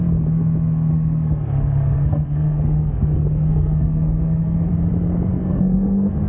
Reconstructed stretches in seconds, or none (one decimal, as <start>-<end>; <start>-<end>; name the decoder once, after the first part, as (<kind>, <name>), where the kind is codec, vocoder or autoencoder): 0.9-4.7 (codec, SNAC); 5.3-6.3